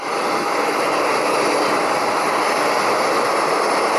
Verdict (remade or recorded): recorded